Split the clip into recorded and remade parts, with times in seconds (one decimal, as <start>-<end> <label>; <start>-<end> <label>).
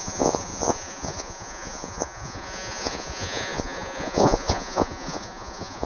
0.0-5.8 remade